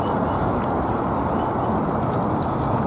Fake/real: real